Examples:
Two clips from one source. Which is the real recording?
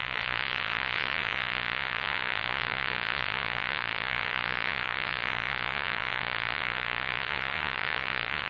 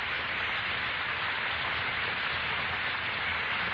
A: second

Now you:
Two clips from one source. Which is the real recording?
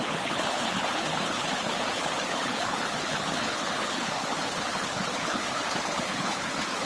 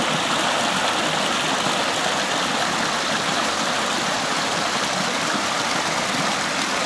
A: second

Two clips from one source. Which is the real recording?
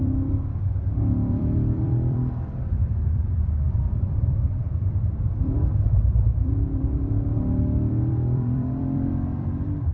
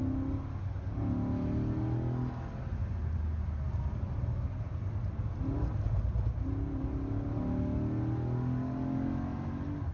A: second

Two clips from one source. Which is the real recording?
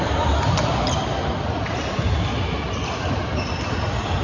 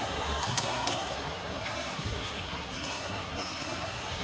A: first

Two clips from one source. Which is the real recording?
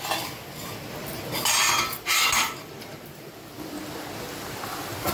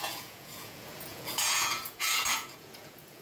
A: first